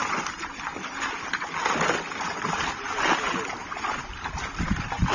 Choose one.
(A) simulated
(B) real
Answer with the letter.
B